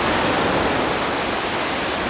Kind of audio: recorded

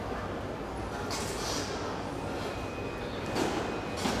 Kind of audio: recorded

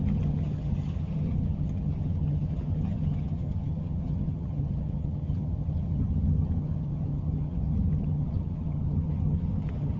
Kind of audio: remade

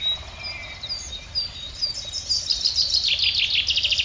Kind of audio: recorded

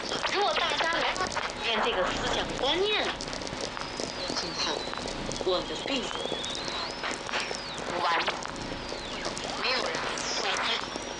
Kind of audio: recorded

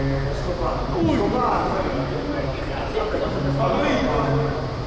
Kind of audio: recorded